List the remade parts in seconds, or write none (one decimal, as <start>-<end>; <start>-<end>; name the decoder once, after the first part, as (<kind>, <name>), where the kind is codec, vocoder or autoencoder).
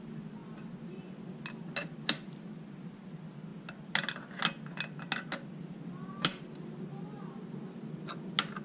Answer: none